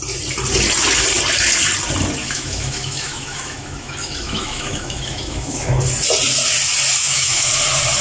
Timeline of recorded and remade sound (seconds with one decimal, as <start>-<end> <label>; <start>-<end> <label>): 0.0-2.2 recorded; 2.2-5.8 remade; 5.8-7.0 recorded; 7.0-7.5 remade; 7.5-8.0 recorded